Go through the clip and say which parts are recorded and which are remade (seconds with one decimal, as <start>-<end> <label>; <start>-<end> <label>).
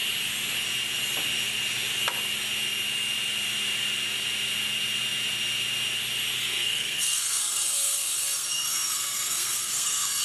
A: 0.0-6.4 recorded; 6.4-10.2 remade